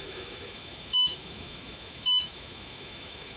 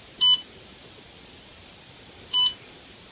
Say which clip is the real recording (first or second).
second